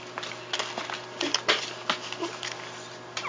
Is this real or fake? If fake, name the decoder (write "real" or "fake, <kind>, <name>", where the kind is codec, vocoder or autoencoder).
real